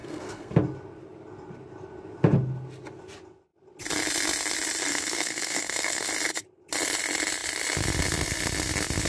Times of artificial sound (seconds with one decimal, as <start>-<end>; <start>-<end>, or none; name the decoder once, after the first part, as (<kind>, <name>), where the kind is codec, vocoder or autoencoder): 0.0-0.5 (codec, SNAC); 4.9-6.1